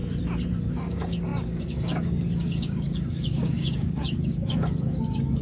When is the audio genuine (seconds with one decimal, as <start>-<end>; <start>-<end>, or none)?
0.0-0.6